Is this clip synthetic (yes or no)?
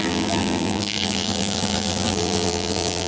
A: yes